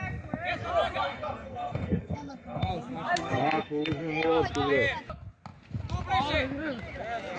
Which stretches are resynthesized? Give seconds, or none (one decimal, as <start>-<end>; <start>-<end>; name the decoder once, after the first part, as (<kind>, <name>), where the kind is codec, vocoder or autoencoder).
1.0-2.7 (codec, SNAC); 3.2-4.3

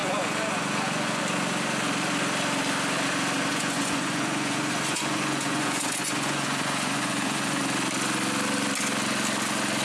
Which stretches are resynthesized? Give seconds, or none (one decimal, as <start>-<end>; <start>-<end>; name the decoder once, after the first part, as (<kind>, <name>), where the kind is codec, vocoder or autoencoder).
0.0-1.2 (vocoder, Vocos); 3.5-7.6

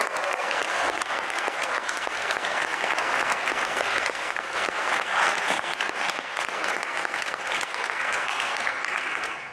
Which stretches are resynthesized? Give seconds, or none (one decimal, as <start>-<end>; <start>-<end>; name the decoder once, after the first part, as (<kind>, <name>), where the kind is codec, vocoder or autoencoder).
0.0-9.5 (codec, SNAC)